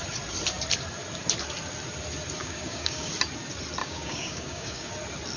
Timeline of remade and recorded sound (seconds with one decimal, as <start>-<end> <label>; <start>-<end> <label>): 0.0-2.4 recorded; 2.4-3.1 remade; 3.1-3.8 recorded; 3.8-4.9 remade; 4.9-5.4 recorded